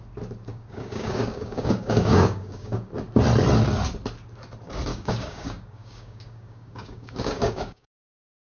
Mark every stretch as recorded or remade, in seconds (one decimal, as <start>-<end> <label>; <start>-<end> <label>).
0.0-0.5 recorded; 0.5-2.9 remade; 2.9-4.9 recorded; 4.9-8.5 remade

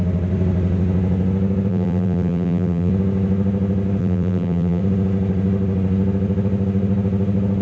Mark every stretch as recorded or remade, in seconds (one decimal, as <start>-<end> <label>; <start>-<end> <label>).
0.0-1.7 recorded; 1.7-2.9 remade; 2.9-4.0 recorded; 4.0-4.8 remade; 4.8-7.6 recorded

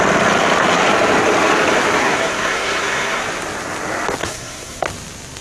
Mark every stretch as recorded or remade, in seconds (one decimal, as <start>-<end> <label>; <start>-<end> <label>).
0.0-2.0 recorded; 2.0-3.2 remade; 3.2-4.2 recorded; 4.2-4.8 remade; 4.8-5.4 recorded

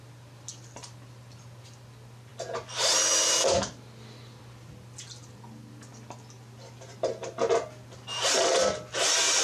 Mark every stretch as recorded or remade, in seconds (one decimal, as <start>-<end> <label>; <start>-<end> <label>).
0.0-9.4 recorded

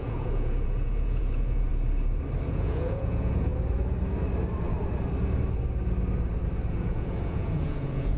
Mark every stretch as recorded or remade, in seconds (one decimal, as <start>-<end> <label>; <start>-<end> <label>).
0.0-1.7 remade; 1.7-2.5 recorded; 2.5-3.5 remade; 3.5-6.7 recorded; 6.7-8.2 remade

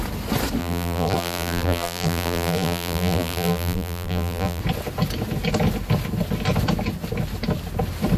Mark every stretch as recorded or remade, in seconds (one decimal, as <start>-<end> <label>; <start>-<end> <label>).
0.0-0.6 recorded; 0.6-4.6 remade; 4.6-8.2 recorded

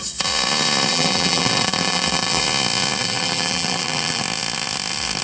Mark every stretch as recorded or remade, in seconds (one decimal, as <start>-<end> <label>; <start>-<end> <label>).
0.0-0.9 recorded; 0.9-2.4 remade; 2.4-3.0 recorded; 3.0-4.2 remade; 4.2-5.2 recorded